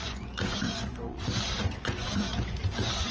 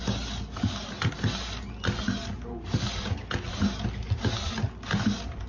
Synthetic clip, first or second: first